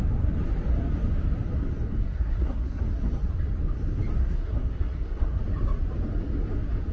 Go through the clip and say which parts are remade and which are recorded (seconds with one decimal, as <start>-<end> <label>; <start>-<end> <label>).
0.0-2.0 recorded; 2.0-2.8 remade; 2.8-4.2 recorded; 4.2-5.4 remade; 5.4-6.9 recorded